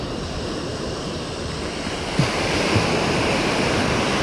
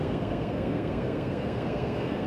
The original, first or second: first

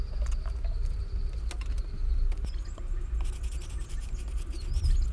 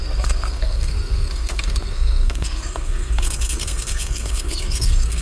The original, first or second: first